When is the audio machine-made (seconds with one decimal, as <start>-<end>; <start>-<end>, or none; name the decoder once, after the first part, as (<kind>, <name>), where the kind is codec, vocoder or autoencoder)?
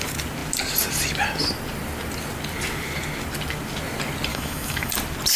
4.3-4.9 (autoencoder, DAC-VAE)